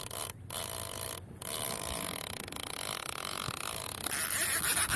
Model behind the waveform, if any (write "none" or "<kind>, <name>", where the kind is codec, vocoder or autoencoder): none